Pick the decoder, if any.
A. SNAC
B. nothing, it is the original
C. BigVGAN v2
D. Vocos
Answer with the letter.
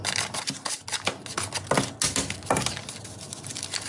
B